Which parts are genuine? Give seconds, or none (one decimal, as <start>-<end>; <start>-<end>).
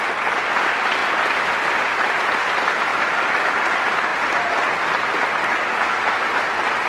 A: 0.0-1.0; 2.0-6.9